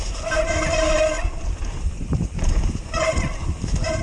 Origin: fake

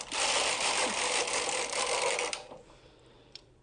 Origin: fake